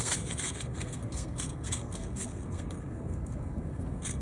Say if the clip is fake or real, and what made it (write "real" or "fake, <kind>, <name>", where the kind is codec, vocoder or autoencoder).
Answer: fake, codec, SNAC